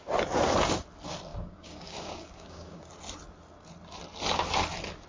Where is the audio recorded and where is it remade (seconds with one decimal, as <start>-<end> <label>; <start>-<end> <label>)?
0.0-1.3 recorded; 1.3-2.9 remade; 2.9-5.1 recorded